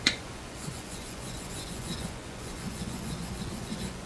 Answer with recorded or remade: remade